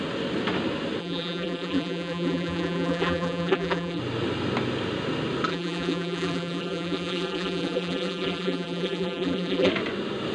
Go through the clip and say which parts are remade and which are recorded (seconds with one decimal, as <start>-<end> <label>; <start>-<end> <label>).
0.0-1.0 recorded; 1.0-4.0 remade; 4.0-5.5 recorded; 5.5-9.7 remade; 9.7-10.3 recorded